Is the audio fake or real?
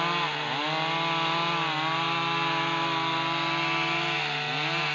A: real